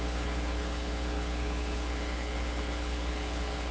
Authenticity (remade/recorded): remade